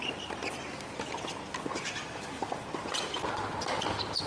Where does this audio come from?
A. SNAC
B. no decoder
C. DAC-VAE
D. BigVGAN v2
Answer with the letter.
B